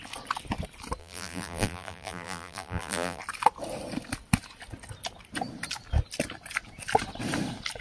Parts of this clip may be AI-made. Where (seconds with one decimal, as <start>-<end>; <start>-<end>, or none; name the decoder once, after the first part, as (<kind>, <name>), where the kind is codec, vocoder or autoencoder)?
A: 1.0-3.2 (vocoder, BigVGAN v2)